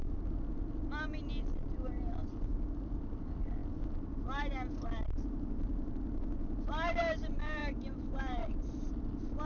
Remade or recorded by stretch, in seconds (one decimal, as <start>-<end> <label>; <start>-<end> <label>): 0.0-7.6 recorded; 7.6-8.9 remade; 8.9-9.5 recorded